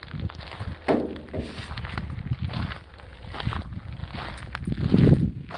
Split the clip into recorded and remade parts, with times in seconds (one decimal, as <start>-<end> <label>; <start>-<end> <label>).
0.0-5.6 recorded